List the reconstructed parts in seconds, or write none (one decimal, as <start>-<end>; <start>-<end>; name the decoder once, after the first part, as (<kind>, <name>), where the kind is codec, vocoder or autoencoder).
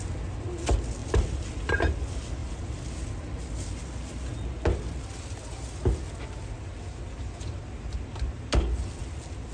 1.0-1.5 (vocoder, BigVGAN v2)